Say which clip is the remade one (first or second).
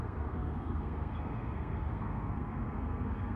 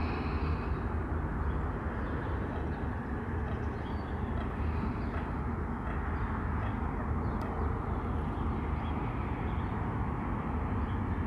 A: first